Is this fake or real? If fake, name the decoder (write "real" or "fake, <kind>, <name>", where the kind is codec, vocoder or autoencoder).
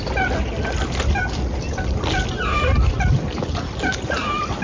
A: real